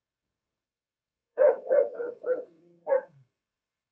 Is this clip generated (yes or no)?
yes